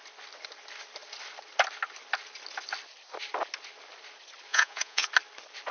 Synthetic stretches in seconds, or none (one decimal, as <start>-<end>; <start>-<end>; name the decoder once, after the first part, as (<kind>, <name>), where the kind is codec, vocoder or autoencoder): 4.5-5.1 (vocoder, Vocos)